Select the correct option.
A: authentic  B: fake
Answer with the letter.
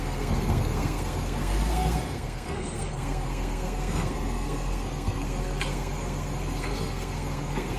B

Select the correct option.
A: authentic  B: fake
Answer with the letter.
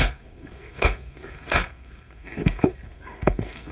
B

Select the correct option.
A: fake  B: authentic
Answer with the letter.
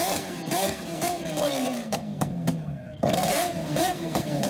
A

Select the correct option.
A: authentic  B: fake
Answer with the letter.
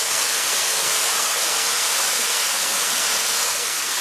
B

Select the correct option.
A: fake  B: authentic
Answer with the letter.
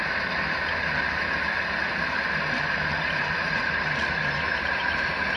B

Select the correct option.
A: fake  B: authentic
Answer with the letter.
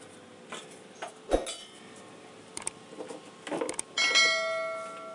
B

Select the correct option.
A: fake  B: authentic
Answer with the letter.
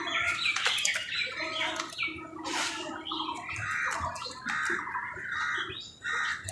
B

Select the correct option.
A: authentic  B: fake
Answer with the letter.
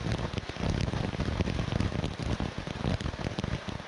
A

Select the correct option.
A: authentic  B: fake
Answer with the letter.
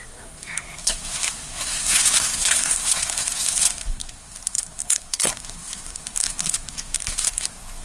B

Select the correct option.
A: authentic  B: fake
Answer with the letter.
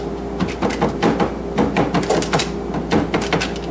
A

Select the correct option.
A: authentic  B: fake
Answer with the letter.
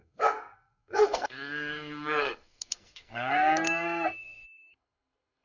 B